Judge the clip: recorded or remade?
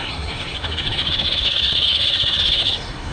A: remade